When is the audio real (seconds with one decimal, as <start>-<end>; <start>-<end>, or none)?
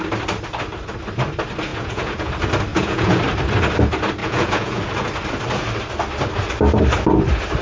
0.0-1.7; 2.3-2.7; 3.2-4.2; 4.8-7.6